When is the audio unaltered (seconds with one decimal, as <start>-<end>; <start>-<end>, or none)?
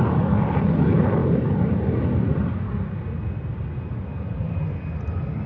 0.0-5.5